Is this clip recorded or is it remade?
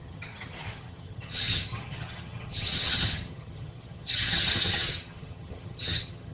remade